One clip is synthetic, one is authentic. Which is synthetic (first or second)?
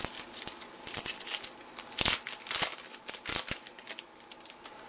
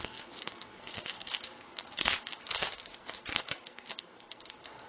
second